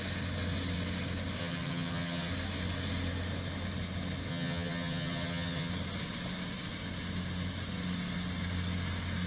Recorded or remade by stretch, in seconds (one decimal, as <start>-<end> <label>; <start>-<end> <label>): 0.0-1.4 recorded; 1.4-2.3 remade; 2.3-4.3 recorded; 4.3-5.7 remade; 5.7-9.3 recorded